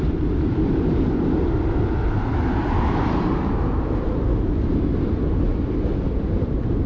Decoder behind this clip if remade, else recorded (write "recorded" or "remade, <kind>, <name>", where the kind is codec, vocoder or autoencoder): recorded